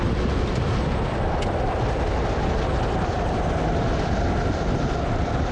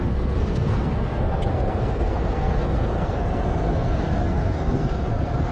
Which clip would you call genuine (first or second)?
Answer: first